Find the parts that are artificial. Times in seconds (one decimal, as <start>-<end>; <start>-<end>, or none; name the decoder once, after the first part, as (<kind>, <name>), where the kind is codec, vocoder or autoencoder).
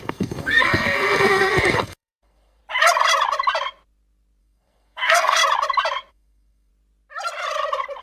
0.0-2.6 (codec, SNAC); 4.4-5.4; 6.1-6.7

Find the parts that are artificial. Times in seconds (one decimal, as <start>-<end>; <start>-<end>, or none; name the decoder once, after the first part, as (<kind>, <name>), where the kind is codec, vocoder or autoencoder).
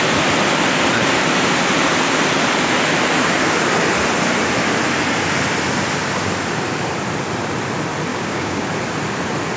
8.1-8.7 (codec, DAC)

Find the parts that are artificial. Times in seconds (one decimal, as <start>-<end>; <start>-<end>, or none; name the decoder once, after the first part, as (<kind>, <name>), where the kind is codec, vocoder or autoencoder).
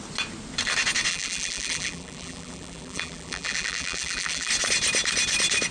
1.1-4.5 (vocoder, BigVGAN v2)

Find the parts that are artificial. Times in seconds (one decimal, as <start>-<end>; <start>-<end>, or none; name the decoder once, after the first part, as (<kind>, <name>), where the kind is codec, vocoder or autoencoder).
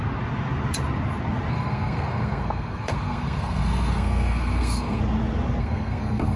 1.5-5.0 (codec, SNAC); 5.6-6.4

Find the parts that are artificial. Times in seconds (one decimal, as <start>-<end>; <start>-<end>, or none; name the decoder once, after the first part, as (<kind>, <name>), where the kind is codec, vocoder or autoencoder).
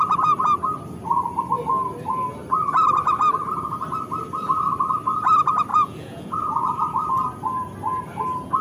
5.7-7.1 (vocoder, Vocos)